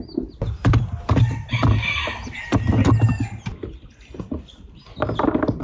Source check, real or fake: real